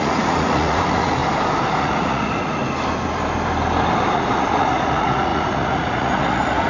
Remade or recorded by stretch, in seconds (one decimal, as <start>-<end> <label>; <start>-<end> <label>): 0.0-1.2 remade; 1.2-1.8 recorded; 1.8-2.6 remade; 2.6-4.1 recorded; 4.1-6.7 remade